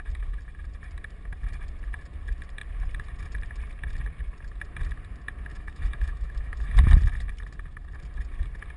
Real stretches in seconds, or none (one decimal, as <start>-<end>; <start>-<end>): 0.0-5.5; 6.7-8.8